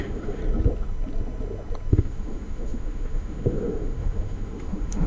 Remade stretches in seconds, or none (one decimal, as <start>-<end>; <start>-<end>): 0.0-0.4; 1.9-5.1